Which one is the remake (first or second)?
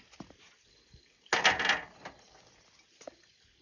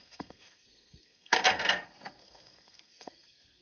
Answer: second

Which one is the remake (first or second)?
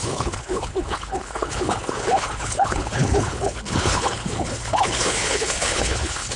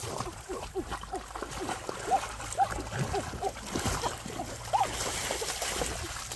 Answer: first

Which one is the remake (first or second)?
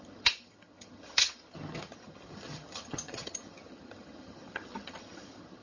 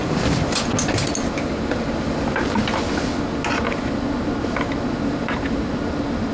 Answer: first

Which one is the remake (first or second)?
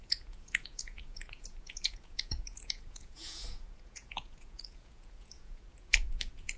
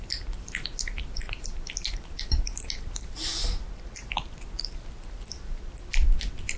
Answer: first